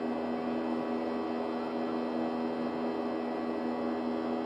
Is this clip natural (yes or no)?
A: yes